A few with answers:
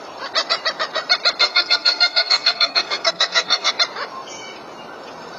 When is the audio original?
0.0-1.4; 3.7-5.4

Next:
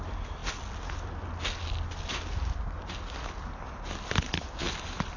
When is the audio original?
0.0-5.2